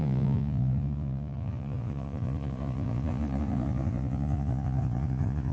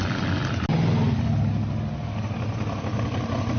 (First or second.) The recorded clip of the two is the second